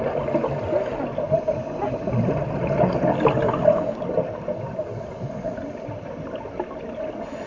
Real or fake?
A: real